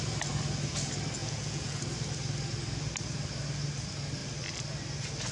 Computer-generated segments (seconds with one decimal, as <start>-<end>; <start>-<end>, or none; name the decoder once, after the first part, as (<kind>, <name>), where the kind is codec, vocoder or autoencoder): 1.2-1.8 (vocoder, Vocos)